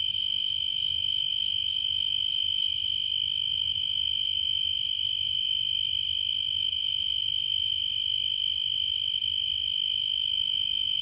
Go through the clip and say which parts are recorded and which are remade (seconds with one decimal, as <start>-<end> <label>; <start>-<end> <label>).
0.0-11.0 recorded